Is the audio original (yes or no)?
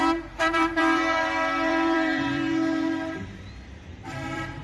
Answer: no